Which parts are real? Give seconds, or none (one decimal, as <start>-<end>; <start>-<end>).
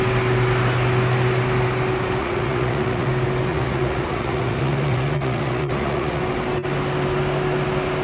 0.0-2.2; 3.1-3.5; 6.2-8.0